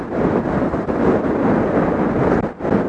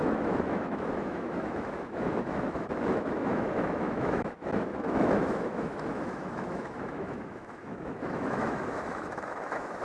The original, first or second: first